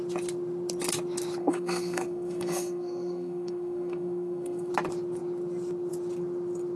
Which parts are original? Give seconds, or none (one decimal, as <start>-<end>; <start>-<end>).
0.0-1.4; 4.7-6.8